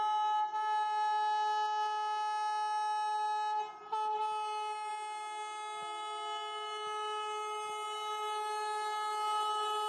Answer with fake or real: real